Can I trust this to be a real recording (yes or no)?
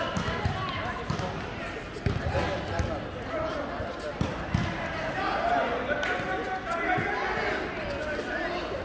yes